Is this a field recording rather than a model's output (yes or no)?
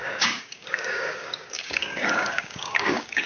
no